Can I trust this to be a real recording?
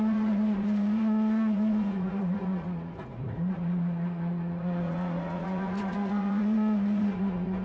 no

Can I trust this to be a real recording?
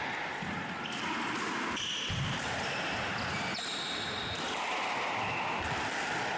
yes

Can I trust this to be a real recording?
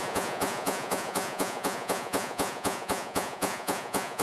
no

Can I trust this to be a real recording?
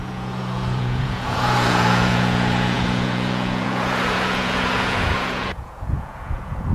no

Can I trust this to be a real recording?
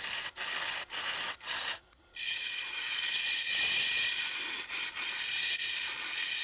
yes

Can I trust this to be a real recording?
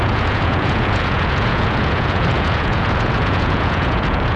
no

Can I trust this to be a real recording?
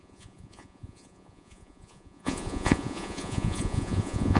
no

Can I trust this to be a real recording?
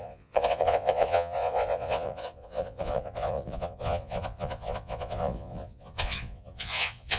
no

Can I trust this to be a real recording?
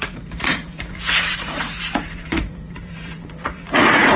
no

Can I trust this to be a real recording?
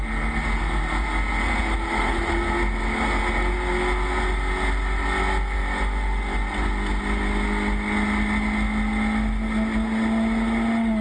yes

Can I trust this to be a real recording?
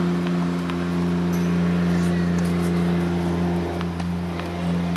yes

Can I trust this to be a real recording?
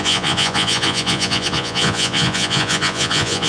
no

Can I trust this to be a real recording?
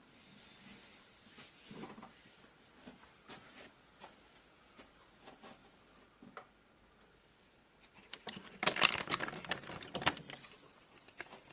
yes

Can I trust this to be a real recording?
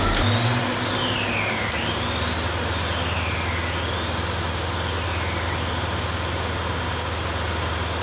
yes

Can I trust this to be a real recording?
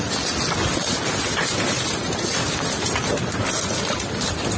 yes